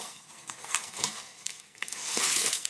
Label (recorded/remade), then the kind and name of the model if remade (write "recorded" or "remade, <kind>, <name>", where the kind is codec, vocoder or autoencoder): remade, codec, SNAC